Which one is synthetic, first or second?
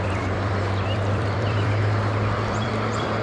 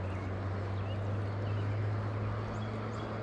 first